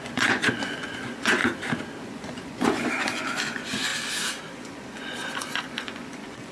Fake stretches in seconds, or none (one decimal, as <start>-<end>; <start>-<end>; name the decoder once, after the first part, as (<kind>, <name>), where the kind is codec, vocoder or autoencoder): 0.0-1.4 (vocoder, Vocos); 2.0-3.9; 4.5-6.5